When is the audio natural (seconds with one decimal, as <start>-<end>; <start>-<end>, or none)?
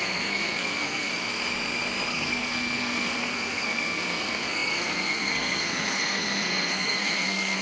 1.1-2.1